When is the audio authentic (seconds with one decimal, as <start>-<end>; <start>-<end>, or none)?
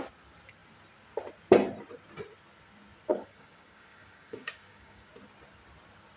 0.0-3.1; 5.1-6.2